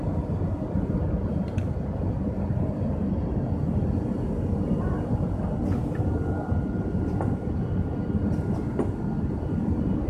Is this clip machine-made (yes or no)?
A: no